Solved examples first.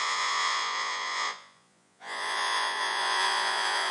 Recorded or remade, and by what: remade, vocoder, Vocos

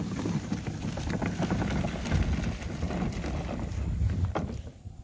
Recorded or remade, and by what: recorded